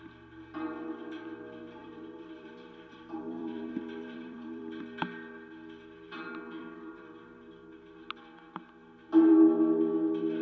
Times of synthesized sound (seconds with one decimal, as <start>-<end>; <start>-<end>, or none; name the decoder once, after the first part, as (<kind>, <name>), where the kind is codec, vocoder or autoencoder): 1.8-4.6 (vocoder, BigVGAN v2); 6.6-7.3